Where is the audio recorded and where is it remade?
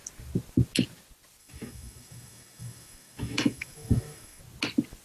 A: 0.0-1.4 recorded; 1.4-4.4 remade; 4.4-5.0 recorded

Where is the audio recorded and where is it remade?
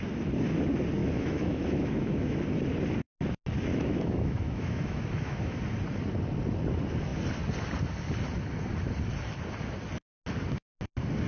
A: 0.0-1.0 recorded; 1.0-2.4 remade; 2.4-3.7 recorded; 3.7-5.6 remade; 5.6-11.3 recorded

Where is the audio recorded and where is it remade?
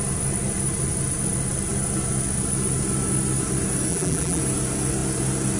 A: 0.0-3.9 recorded; 3.9-4.4 remade; 4.4-5.6 recorded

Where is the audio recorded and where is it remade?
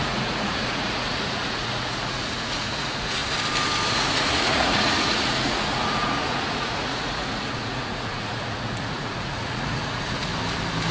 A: 0.0-3.2 remade; 3.2-3.9 recorded; 3.9-10.3 remade; 10.3-10.9 recorded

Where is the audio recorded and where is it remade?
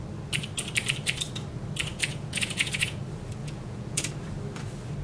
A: 0.0-1.9 recorded; 1.9-3.0 remade; 3.0-3.4 recorded; 3.4-4.0 remade; 4.0-5.0 recorded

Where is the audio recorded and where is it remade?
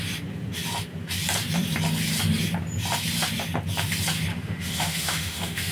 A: 0.0-4.3 recorded; 4.3-5.7 remade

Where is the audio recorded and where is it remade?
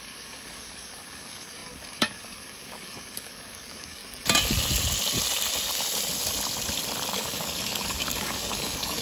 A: 0.0-4.0 remade; 4.0-7.1 recorded; 7.1-9.0 remade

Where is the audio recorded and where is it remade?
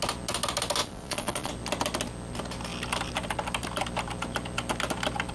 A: 0.0-0.8 recorded; 0.8-1.5 remade; 1.5-5.3 recorded